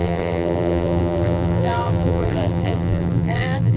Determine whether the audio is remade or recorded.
remade